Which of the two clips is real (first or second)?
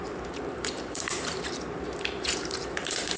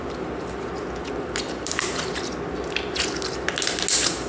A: second